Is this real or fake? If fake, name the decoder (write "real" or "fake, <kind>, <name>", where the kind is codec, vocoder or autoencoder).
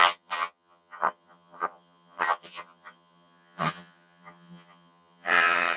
fake, vocoder, HiFi-GAN